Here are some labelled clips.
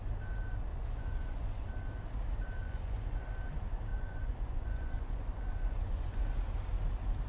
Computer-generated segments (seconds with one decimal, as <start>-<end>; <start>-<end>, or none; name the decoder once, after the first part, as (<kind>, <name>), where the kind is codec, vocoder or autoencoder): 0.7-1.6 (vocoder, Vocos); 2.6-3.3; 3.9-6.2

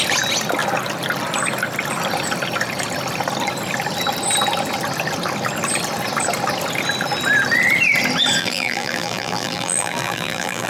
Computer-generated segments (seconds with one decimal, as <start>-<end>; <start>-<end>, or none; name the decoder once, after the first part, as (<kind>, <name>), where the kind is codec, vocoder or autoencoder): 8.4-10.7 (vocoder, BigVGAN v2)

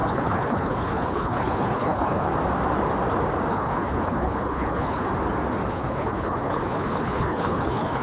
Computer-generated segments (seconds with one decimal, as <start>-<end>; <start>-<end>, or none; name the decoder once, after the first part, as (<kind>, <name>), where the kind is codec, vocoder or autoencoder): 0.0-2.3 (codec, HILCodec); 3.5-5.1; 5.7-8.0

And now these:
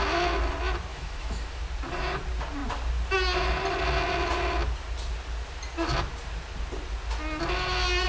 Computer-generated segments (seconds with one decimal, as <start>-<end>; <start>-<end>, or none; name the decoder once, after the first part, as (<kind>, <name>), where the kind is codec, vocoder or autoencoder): 0.9-1.6 (autoencoder, DAC-VAE)

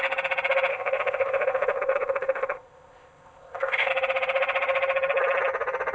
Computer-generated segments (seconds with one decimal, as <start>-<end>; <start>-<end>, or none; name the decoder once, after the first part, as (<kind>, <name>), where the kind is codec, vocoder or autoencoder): 0.7-3.9 (codec, ZipCodec)

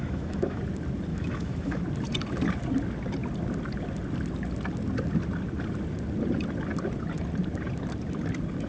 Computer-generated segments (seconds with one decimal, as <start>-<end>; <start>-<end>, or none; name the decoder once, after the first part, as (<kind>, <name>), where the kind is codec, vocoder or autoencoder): 0.0-0.6 (autoencoder, DAC-VAE); 1.1-1.8

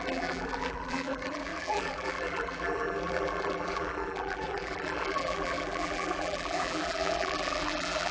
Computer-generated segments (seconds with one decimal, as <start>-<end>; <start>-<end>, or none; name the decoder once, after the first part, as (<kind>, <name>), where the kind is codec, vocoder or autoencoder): 0.0-8.1 (vocoder, BigVGAN v2)